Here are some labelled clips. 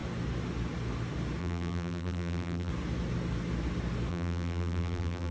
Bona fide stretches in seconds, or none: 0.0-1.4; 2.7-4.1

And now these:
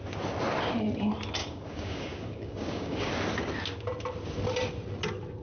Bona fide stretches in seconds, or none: 0.0-1.4; 3.1-5.4

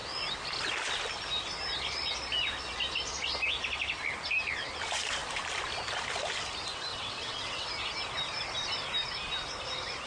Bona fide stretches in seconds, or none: 0.0-6.9; 7.7-10.1

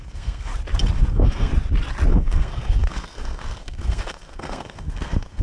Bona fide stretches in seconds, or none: 0.5-1.1; 1.5-2.1

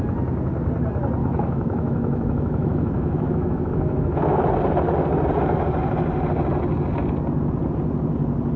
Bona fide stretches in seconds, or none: 0.0-1.2; 4.2-8.6

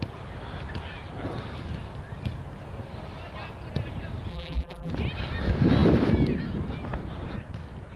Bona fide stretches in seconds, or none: 0.0-4.3; 4.9-8.0